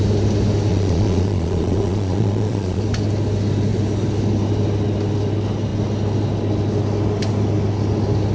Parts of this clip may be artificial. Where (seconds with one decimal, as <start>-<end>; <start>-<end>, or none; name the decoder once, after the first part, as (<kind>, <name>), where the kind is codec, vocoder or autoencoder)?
0.7-2.8 (vocoder, Vocos)